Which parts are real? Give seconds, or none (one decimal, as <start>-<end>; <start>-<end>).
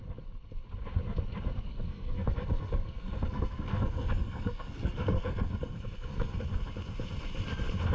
0.0-1.7; 6.4-7.9